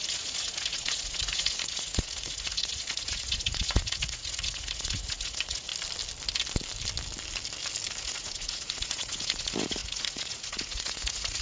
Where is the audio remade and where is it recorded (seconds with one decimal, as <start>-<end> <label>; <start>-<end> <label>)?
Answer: 0.0-5.7 remade; 5.7-8.0 recorded; 8.0-11.4 remade

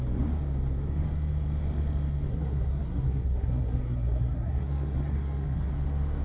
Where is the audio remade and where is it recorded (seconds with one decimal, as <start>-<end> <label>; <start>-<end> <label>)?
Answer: 0.0-2.3 recorded; 2.3-5.7 remade; 5.7-6.2 recorded